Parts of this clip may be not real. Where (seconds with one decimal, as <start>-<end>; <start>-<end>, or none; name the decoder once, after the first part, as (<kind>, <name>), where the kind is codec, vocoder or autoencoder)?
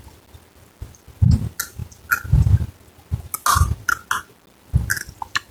none